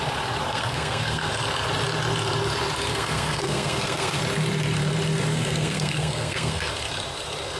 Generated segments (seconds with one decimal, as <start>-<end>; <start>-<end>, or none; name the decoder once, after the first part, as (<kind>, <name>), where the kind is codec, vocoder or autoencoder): 0.5-1.3 (codec, SNAC); 2.9-4.2; 5.3-6.7